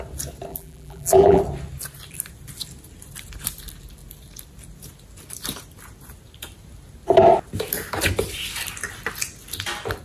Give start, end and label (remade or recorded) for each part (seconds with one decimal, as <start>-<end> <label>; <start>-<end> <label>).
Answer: 0.0-0.5 recorded; 0.5-1.4 remade; 1.4-10.0 recorded